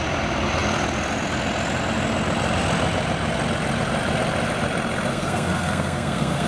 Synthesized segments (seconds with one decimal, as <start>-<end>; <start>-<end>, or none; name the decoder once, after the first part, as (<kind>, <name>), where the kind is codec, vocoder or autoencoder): 5.1-6.5 (codec, SNAC)